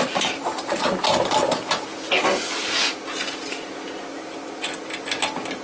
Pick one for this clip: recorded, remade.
recorded